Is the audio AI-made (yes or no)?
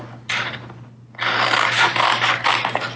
no